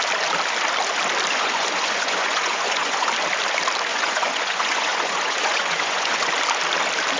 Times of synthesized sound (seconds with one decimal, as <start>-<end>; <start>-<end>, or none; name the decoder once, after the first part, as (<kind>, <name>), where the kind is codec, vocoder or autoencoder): 1.3-3.1 (vocoder, Vocos); 3.9-6.3